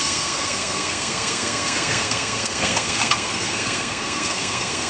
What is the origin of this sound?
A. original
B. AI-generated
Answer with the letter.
B